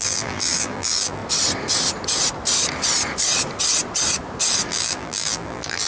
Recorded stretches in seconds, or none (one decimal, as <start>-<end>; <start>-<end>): 1.2-4.7